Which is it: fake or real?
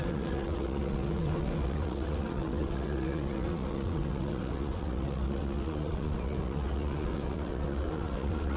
fake